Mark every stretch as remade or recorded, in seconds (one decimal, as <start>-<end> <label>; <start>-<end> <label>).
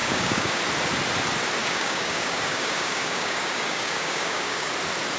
0.0-0.6 remade; 0.6-1.6 recorded; 1.6-4.7 remade; 4.7-5.2 recorded